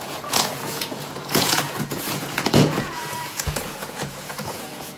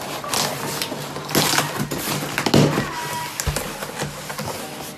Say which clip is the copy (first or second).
first